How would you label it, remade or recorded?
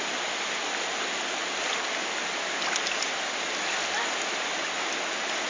recorded